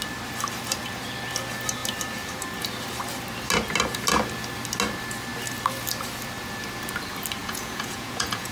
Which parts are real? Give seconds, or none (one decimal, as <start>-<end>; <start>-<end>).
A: 0.0-7.4